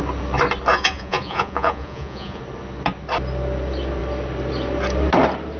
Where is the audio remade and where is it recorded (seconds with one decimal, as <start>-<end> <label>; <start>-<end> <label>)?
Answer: 0.0-0.7 recorded; 0.7-2.4 remade; 2.4-5.6 recorded